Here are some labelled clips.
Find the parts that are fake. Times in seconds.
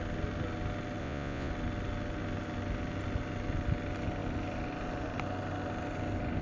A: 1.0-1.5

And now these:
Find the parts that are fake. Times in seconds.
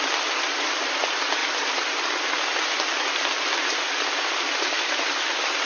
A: none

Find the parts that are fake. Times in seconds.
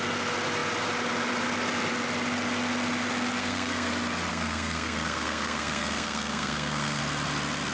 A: 3.4-3.9; 4.3-7.0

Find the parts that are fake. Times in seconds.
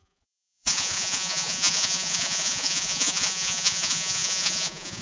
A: 0.0-5.0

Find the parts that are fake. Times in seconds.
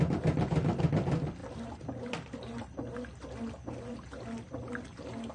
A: none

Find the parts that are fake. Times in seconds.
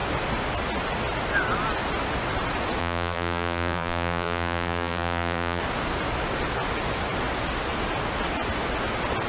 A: 2.8-5.6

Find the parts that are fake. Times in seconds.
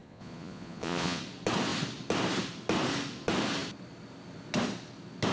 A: 0.0-1.2